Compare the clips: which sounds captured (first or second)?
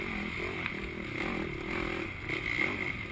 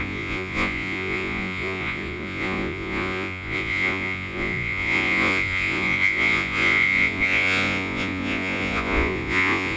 first